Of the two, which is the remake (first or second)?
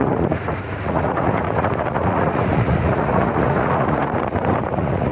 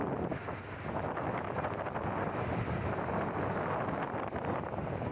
first